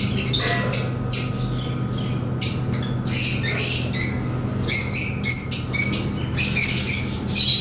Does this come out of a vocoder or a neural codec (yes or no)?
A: no